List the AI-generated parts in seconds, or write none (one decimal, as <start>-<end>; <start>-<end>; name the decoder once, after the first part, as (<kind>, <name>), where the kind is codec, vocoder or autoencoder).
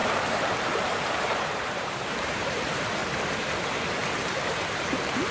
0.0-3.0 (vocoder, BigVGAN v2); 4.1-5.3